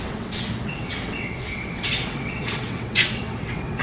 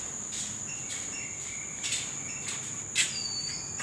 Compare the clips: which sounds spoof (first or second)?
first